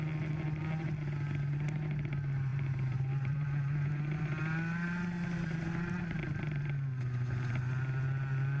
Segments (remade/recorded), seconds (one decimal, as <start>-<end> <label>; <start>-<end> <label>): 0.0-2.5 recorded; 2.5-4.2 remade; 4.2-8.6 recorded